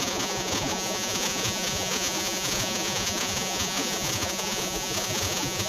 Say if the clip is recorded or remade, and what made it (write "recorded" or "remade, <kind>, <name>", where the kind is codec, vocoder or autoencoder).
remade, vocoder, Vocos